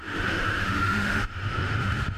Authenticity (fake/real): fake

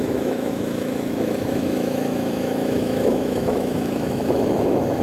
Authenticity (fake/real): fake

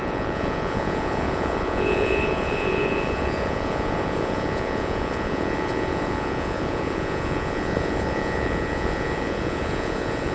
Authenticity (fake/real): fake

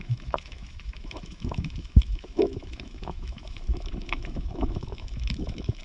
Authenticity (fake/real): fake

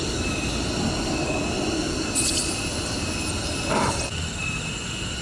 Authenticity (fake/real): real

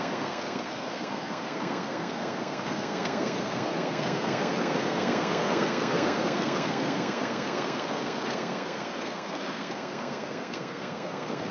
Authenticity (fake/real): fake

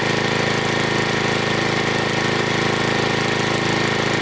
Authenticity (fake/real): real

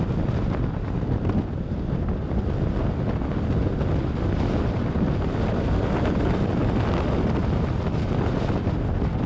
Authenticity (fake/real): real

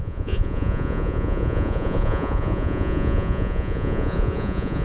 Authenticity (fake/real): fake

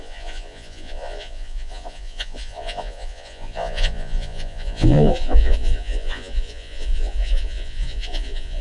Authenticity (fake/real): fake